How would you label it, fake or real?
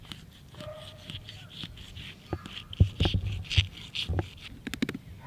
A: real